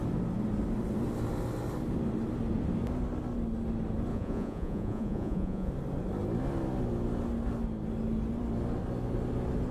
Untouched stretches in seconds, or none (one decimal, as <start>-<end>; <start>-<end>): 0.0-4.1; 5.7-9.7